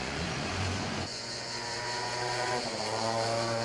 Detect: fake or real fake